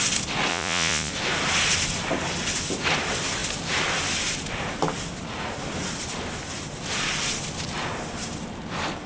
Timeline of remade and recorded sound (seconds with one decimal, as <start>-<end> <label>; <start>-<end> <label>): 0.0-0.5 recorded; 0.5-1.1 remade; 1.1-9.1 recorded